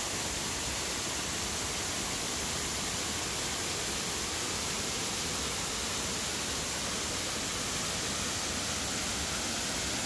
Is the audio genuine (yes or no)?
yes